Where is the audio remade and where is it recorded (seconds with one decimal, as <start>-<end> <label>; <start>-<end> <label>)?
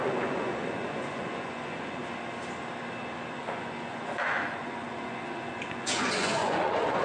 0.0-2.0 remade; 2.0-3.4 recorded; 3.4-7.0 remade